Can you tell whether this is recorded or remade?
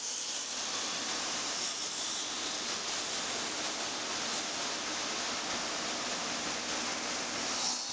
recorded